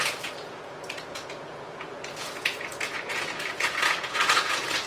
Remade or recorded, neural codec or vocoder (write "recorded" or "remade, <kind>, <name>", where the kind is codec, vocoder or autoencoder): remade, vocoder, Vocos